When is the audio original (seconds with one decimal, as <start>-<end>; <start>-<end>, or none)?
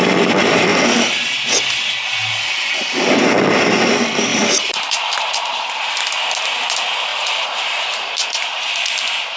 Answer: 0.0-4.3; 5.9-7.1; 8.8-9.4